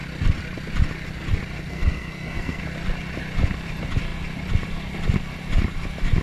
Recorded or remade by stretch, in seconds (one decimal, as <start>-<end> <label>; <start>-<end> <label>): 0.0-1.7 recorded; 1.7-2.6 remade; 2.6-6.2 recorded